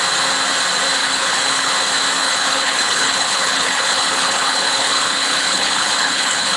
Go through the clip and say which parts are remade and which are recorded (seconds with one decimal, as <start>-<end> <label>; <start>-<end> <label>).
0.0-1.0 recorded; 1.0-1.7 remade; 1.7-2.2 recorded; 2.2-6.6 remade